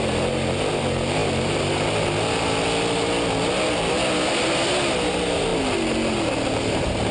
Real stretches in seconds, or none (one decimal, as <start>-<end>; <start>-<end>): 0.0-7.1